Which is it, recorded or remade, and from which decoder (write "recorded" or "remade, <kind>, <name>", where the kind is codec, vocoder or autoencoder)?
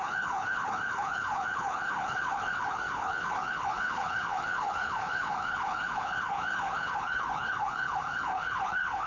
remade, codec, HILCodec